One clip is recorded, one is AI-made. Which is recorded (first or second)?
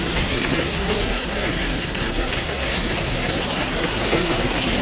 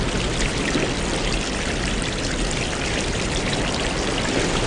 second